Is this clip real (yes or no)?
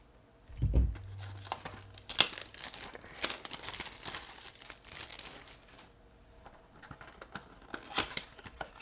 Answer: yes